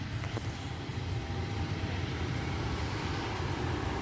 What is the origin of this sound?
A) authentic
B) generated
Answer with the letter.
B